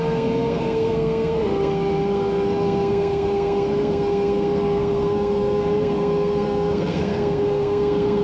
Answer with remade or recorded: remade